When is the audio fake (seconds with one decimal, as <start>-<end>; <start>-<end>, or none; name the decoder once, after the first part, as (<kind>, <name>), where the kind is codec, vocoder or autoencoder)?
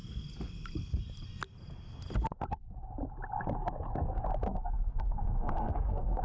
4.5-6.2 (codec, SNAC)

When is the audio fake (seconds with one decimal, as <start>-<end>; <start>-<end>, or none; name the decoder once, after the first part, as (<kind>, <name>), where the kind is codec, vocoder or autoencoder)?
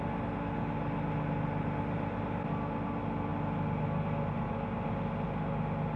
none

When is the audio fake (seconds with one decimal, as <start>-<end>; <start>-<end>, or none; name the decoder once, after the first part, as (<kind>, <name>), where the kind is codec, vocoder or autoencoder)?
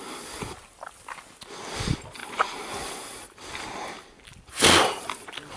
2.2-3.6 (vocoder, BigVGAN v2)